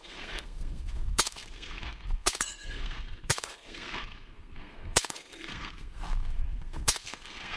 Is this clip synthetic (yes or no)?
yes